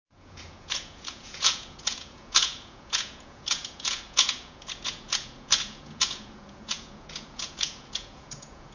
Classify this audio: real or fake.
fake